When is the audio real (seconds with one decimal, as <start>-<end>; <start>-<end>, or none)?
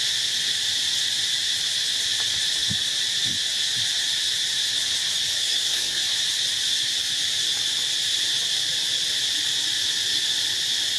0.0-5.4; 6.0-11.0